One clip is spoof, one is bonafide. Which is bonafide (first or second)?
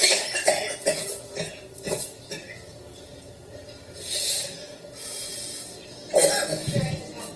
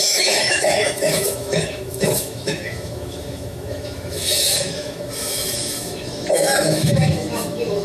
first